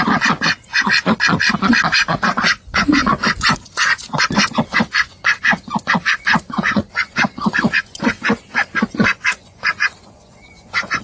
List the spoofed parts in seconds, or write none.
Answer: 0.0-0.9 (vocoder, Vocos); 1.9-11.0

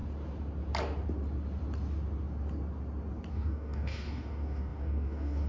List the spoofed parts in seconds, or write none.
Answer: 3.3-5.5 (codec, DAC)

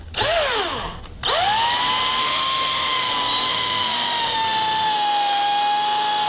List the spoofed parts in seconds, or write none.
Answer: 2.2-3.1 (autoencoder, DAC-VAE); 3.5-6.3

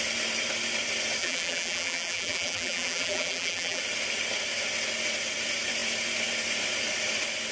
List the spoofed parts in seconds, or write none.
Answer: 1.2-3.8 (vocoder, BigVGAN v2)